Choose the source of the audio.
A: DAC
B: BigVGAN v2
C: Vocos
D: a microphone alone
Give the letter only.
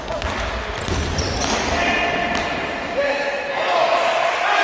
D